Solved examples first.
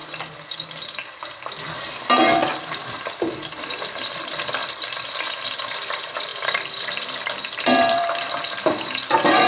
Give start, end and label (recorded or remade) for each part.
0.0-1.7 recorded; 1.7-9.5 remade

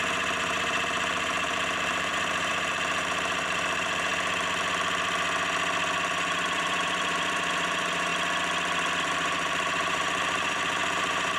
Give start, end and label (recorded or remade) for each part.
0.0-4.1 remade; 4.1-6.1 recorded; 6.1-8.1 remade; 8.1-9.0 recorded; 9.0-11.4 remade

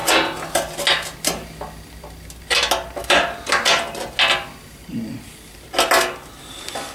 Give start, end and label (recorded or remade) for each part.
0.0-6.9 recorded